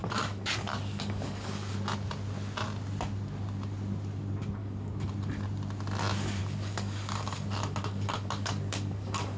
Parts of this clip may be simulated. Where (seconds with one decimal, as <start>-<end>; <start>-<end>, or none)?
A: 0.0-1.7; 4.6-5.1; 6.4-9.4

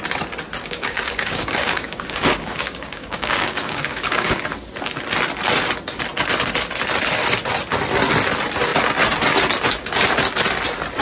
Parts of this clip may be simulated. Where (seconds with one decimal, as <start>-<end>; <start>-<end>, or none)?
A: 0.6-4.4

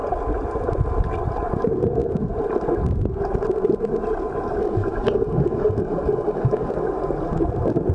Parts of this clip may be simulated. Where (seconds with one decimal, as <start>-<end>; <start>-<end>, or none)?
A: 4.6-6.7